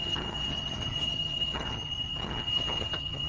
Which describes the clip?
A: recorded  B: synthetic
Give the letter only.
B